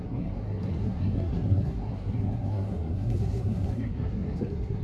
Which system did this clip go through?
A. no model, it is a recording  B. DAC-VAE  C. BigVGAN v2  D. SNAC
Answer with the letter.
D